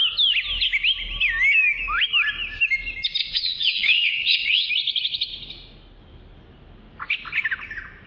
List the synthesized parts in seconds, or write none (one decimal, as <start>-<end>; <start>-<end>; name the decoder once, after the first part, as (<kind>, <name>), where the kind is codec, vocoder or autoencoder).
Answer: 3.2-4.7 (vocoder, WaveNeXt)